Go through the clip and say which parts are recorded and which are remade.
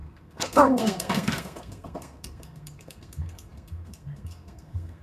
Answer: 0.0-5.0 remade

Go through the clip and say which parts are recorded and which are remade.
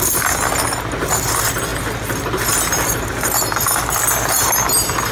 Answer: 0.0-5.1 recorded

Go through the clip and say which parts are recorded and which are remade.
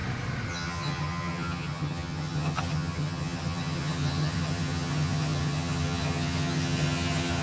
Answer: 0.0-0.5 recorded; 0.5-7.4 remade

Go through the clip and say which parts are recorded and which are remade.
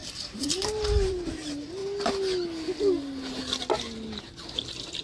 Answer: 0.0-1.8 remade; 1.8-5.0 recorded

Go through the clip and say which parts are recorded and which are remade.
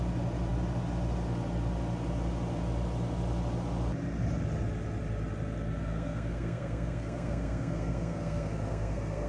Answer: 0.0-5.8 recorded; 5.8-9.3 remade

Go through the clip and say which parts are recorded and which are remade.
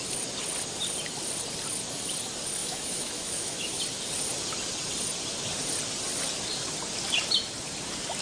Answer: 0.0-2.6 recorded; 2.6-3.8 remade; 3.8-8.2 recorded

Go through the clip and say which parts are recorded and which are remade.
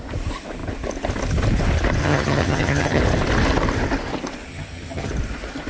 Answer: 0.0-2.0 recorded; 2.0-3.0 remade; 3.0-4.5 recorded; 4.5-5.1 remade; 5.1-5.7 recorded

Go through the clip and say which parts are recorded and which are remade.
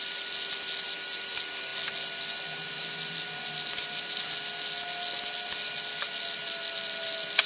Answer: 0.0-7.5 recorded